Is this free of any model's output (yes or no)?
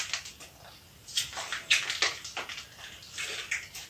yes